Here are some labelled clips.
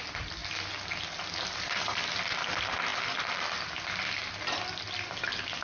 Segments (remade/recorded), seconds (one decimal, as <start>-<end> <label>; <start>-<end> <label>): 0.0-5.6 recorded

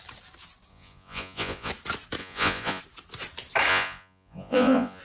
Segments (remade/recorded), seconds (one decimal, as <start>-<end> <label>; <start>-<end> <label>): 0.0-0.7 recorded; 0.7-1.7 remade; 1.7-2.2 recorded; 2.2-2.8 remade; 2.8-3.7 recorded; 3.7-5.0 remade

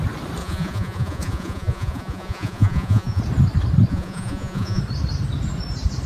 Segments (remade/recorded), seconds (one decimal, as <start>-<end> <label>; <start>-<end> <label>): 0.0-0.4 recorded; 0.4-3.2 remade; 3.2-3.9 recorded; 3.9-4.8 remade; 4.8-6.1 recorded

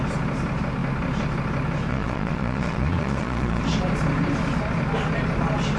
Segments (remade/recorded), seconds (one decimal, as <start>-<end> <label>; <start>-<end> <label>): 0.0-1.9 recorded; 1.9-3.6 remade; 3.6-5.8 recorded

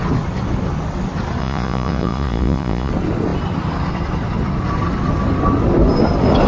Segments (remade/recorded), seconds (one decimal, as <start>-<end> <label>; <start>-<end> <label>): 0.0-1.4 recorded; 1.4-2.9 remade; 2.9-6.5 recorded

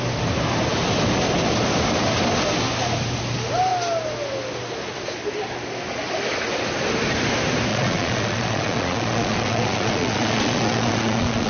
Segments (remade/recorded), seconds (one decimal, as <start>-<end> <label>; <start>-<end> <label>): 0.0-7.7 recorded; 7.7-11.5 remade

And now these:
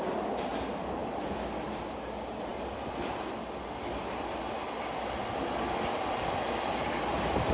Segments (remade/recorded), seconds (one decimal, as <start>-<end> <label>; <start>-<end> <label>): 0.0-7.5 recorded

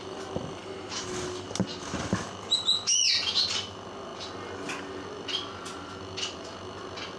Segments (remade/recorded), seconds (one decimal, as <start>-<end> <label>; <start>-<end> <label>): 0.0-7.2 recorded